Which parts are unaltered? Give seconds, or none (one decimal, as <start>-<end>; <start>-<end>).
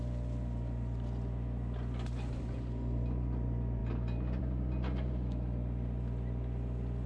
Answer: 0.0-7.1